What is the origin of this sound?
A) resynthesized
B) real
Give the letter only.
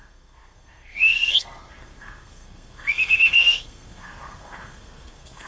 A